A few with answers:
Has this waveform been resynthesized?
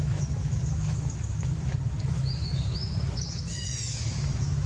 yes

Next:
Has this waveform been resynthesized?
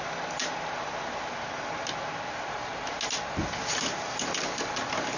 no